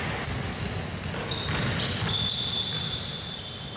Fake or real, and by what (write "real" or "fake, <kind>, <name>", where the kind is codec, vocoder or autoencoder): real